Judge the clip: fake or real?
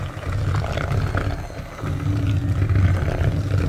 real